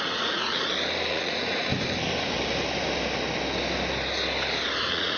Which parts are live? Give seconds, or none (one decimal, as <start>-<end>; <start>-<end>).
0.5-1.1; 1.7-4.8